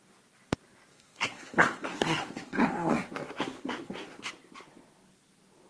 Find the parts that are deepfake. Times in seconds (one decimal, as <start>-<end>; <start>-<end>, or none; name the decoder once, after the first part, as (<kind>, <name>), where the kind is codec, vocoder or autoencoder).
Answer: 0.9-4.3 (codec, SNAC)